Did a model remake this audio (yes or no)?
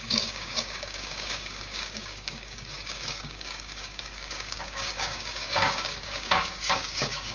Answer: yes